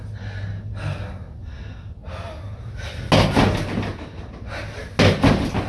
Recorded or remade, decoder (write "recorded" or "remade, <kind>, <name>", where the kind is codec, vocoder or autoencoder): recorded